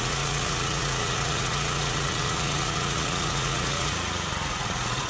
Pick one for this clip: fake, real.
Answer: fake